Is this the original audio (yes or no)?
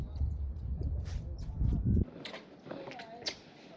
yes